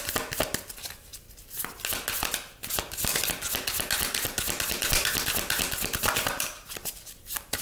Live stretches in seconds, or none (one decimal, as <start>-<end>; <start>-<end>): 0.0-7.6